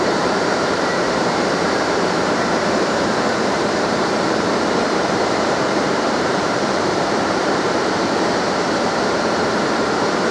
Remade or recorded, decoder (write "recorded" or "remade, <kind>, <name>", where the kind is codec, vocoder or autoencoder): remade, vocoder, BigVGAN v2